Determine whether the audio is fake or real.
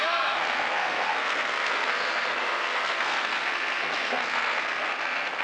fake